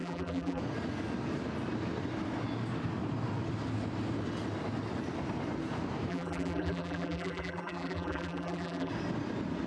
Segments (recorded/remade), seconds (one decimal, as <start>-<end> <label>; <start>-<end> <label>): 0.0-0.6 remade; 0.6-6.1 recorded; 6.1-8.9 remade; 8.9-9.7 recorded